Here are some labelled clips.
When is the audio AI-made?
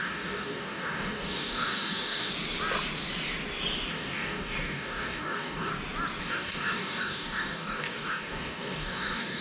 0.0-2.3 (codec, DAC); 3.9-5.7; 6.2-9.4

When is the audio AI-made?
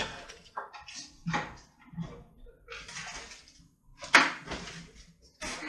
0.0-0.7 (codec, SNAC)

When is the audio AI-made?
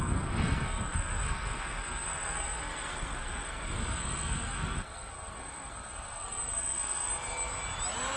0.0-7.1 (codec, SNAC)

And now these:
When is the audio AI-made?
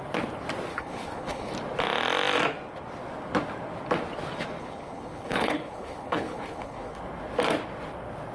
0.7-1.5 (codec, HILCodec); 4.6-7.0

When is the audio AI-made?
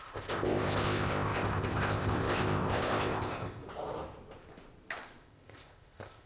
0.0-3.6 (codec, ZipCodec); 5.2-6.3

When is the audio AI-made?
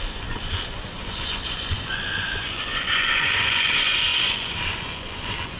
0.0-5.6 (vocoder, Vocos)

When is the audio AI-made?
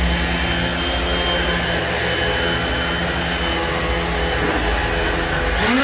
none